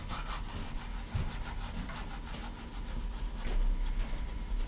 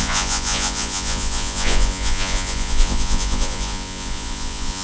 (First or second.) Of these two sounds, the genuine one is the first